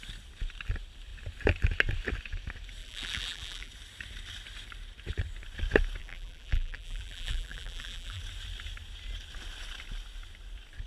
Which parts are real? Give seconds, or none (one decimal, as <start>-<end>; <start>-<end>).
0.0-2.8; 3.7-6.0; 8.2-10.9

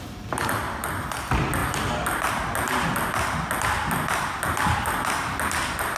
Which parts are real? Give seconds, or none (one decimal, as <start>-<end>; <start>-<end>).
0.0-6.0

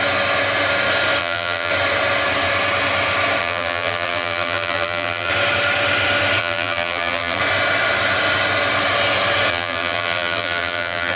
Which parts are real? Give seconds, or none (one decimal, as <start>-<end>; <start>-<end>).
0.0-1.2; 1.7-3.4; 5.3-6.4; 7.4-9.5

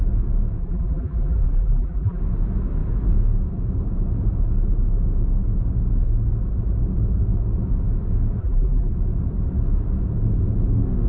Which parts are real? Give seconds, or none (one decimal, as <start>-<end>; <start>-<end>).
0.0-0.6; 2.2-8.4; 8.9-11.1